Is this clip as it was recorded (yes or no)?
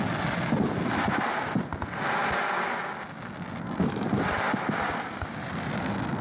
yes